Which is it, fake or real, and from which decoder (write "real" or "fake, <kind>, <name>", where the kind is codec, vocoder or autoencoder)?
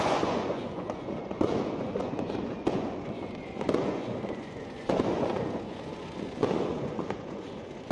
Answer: fake, vocoder, Vocos